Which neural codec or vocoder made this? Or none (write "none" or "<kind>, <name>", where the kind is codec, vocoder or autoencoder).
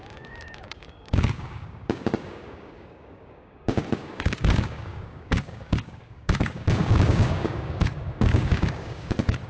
codec, DAC